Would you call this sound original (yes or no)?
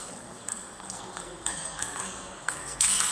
no